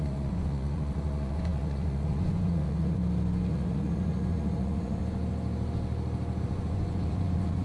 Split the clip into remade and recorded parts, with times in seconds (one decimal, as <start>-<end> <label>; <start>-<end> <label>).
0.0-3.0 remade; 3.0-3.5 recorded; 3.5-5.0 remade; 5.0-6.4 recorded; 6.4-7.6 remade